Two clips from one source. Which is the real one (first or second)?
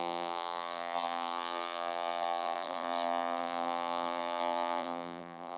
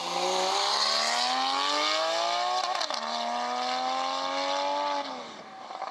second